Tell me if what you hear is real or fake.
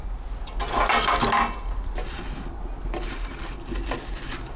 real